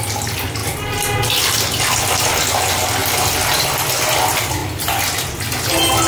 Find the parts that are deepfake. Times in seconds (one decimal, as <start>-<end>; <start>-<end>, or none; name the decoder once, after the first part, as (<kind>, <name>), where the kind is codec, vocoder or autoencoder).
none